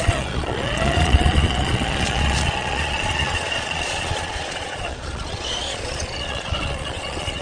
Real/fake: fake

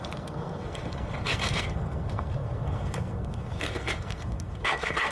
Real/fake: fake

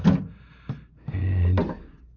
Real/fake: real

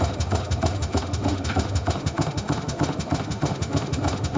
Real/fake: fake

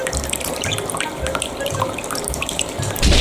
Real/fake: fake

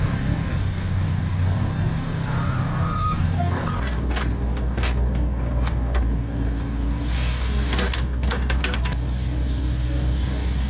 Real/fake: fake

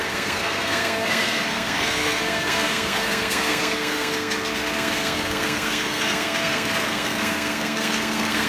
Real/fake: fake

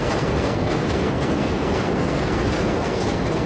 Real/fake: fake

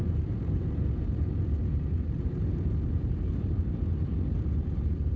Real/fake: real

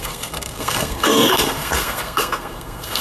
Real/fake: fake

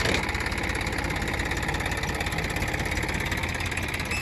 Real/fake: real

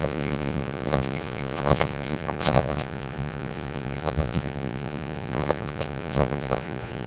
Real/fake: fake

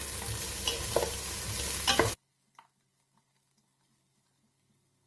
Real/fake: real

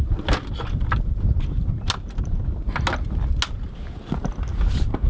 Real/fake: real